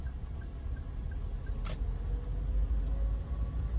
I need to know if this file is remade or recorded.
recorded